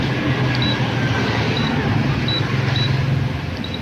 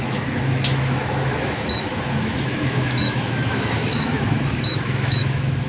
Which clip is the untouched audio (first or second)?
first